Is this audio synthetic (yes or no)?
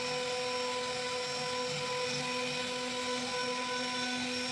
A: no